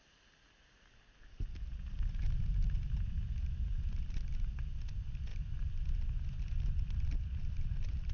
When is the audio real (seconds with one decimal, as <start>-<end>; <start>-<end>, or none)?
0.0-5.3; 6.0-8.1